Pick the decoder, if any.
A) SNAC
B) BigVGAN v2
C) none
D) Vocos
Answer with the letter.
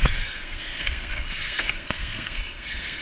A